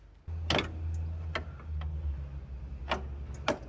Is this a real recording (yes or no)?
yes